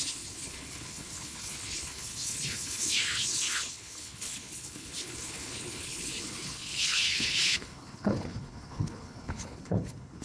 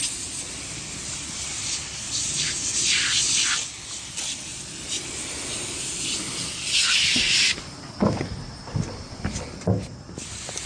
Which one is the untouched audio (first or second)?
second